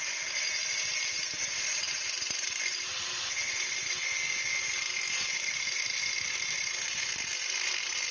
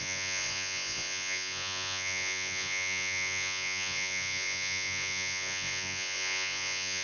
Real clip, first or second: first